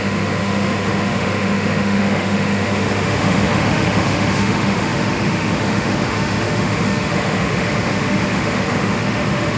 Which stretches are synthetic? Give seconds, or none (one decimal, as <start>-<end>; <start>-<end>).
0.0-9.6